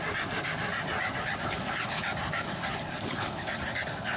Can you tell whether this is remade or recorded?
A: recorded